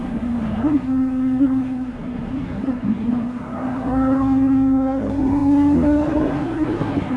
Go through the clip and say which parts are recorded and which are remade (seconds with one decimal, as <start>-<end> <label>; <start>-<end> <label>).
0.0-7.2 remade